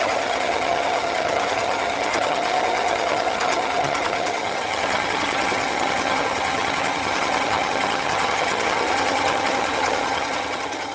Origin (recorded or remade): remade